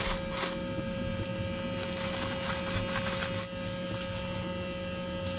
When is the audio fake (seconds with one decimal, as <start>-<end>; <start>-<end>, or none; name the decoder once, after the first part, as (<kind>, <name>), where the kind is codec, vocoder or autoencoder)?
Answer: none